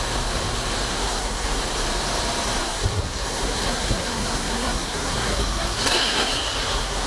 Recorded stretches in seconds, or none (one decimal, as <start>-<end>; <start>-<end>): 0.0-0.9; 1.6-2.6